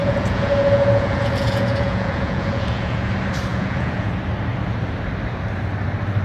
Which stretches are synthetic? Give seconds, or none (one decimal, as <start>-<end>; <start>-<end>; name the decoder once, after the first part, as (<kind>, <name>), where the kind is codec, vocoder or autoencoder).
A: 0.0-3.1 (vocoder, Vocos); 3.5-4.1

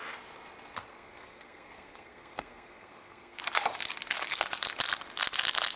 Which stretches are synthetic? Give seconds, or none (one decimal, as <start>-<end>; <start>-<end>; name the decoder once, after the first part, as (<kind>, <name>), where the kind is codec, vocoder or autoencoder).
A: 0.8-3.4 (codec, SNAC)